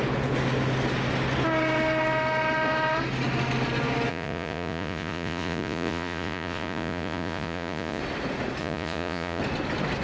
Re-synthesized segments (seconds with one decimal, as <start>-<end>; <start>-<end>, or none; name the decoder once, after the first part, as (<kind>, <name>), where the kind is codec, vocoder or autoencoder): 4.1-8.0 (vocoder, Vocos); 8.6-9.4